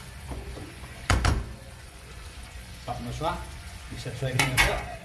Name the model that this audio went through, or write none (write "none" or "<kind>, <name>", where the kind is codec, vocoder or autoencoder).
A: vocoder, Vocos